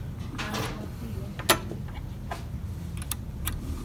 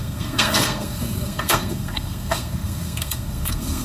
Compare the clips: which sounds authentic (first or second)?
first